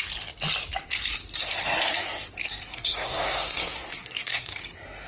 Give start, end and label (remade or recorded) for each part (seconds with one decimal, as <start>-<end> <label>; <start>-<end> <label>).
0.0-2.7 recorded; 2.7-4.5 remade; 4.5-5.1 recorded